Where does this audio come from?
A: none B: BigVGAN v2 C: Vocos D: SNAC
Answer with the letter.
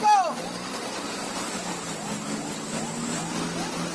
A